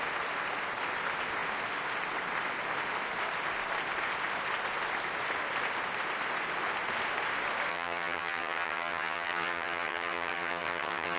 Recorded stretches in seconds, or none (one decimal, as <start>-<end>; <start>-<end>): 0.0-7.7